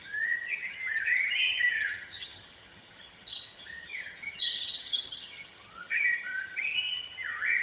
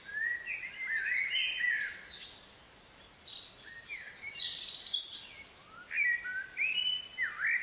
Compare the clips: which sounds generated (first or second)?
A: first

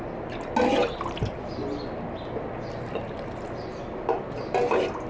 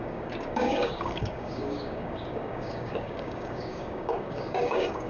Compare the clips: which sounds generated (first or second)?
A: second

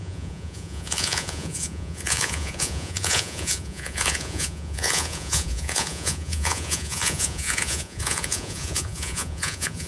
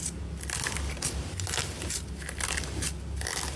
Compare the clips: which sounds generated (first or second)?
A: first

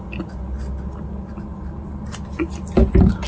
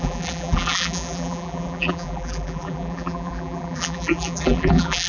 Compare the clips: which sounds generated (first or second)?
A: second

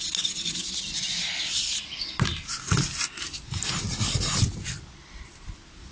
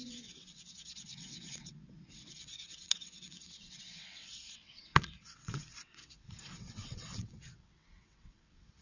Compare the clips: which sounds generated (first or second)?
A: second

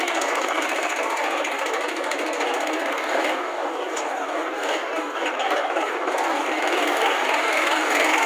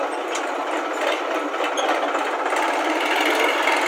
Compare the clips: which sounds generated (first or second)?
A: first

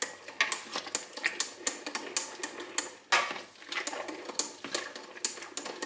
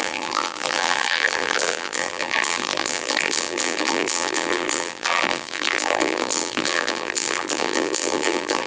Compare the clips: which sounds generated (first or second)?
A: second